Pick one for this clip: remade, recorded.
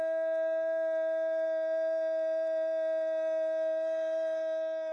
recorded